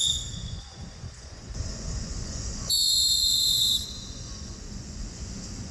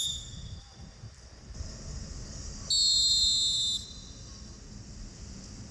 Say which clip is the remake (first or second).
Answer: first